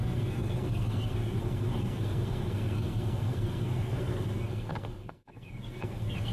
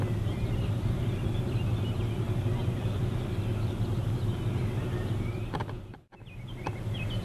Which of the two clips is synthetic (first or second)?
first